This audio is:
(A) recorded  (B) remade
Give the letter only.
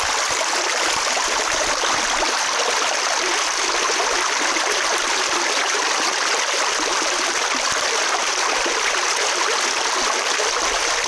A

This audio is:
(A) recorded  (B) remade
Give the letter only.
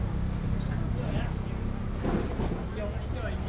A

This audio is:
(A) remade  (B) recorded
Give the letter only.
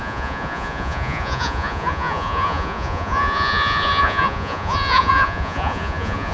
A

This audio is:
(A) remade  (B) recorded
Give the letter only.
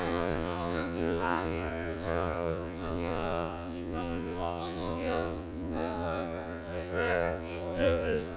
A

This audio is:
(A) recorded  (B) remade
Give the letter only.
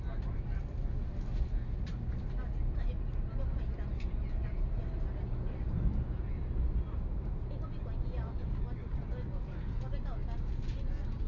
A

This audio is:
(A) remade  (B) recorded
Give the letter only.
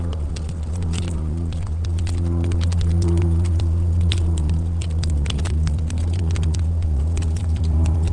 A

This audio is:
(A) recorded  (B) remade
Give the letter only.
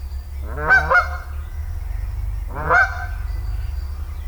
A